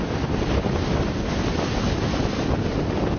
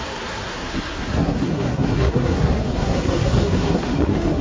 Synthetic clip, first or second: second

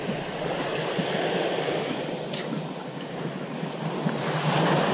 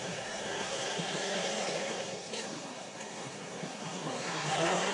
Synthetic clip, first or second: second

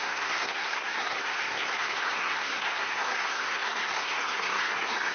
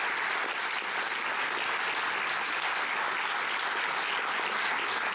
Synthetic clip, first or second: first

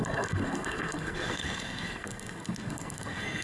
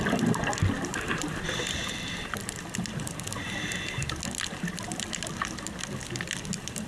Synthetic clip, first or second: first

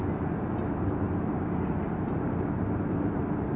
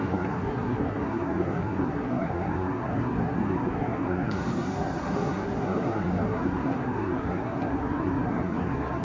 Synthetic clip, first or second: second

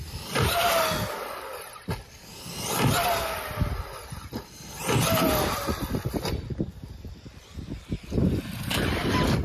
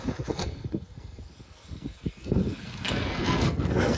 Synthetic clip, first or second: second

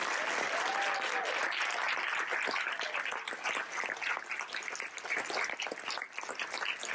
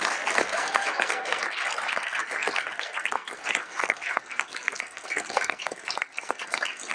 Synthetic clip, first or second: second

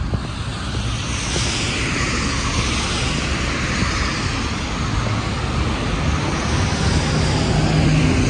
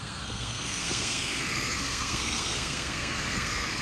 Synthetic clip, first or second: second